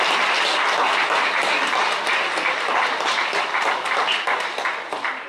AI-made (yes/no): no